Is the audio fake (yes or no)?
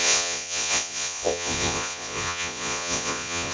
yes